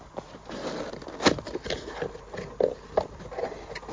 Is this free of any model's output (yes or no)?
yes